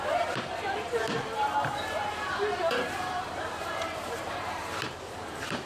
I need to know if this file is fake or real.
fake